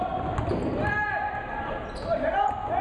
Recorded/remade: recorded